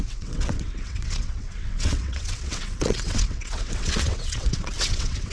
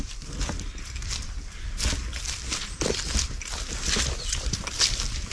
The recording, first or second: second